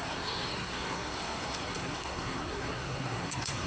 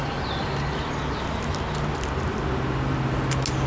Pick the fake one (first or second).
first